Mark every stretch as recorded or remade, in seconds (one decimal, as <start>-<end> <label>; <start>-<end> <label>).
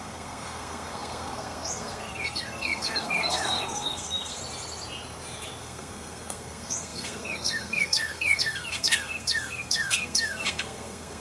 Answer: 0.0-4.4 remade; 4.4-5.6 recorded; 5.6-11.2 remade